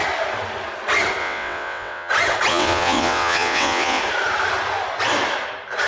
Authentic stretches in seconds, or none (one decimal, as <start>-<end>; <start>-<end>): 0.0-1.2; 2.1-2.5; 4.0-5.9